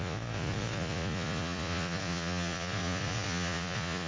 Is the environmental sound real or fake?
fake